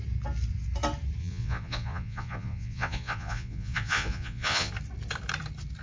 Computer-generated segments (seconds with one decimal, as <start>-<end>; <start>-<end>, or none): 1.2-4.7

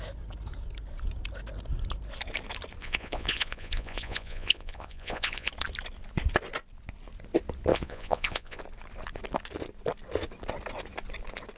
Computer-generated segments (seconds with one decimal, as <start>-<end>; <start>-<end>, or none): 2.8-5.5; 7.7-8.6